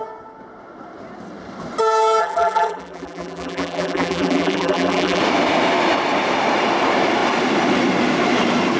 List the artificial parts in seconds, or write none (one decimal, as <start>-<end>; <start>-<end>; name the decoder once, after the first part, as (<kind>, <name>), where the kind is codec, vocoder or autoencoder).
2.2-5.2 (vocoder, BigVGAN v2)